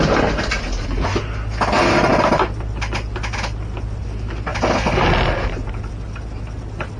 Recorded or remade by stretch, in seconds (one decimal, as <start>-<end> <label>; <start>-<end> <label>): 0.0-7.0 recorded